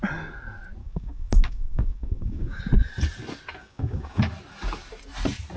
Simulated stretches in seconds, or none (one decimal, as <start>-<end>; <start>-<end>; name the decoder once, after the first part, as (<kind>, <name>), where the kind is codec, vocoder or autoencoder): 0.8-2.6 (codec, DAC); 3.6-4.2